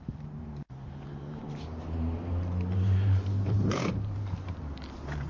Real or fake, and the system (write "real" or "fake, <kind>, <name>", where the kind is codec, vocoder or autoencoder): fake, vocoder, BigVGAN v2